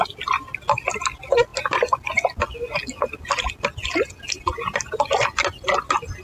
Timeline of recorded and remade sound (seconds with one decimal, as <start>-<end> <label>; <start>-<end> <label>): 0.0-6.2 recorded